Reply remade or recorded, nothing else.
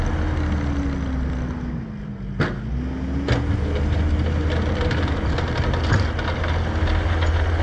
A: recorded